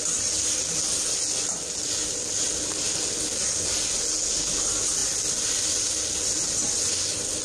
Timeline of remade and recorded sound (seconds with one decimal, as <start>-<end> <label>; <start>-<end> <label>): 0.0-7.4 recorded